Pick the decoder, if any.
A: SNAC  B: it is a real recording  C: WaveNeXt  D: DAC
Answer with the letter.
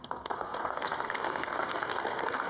A